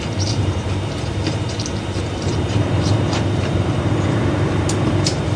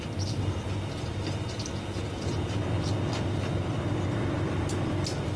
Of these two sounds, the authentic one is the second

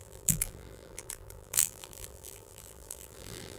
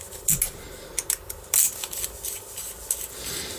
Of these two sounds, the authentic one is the second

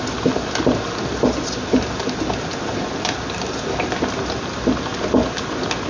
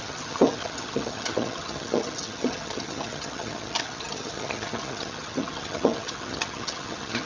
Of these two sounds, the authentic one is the first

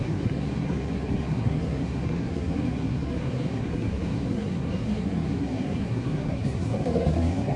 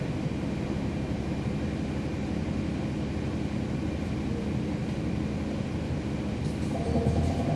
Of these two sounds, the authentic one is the second